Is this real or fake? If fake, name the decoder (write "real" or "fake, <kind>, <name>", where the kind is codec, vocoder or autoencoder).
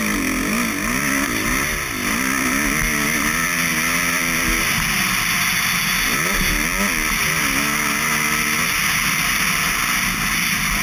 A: real